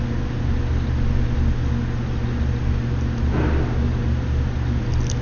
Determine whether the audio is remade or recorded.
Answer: recorded